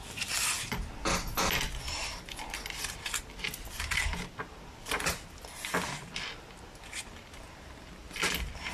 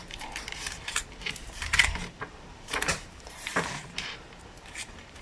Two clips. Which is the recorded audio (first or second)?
first